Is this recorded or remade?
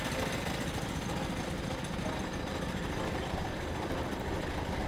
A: recorded